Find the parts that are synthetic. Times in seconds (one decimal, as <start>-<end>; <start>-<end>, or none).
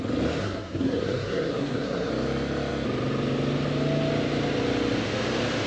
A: 0.4-2.1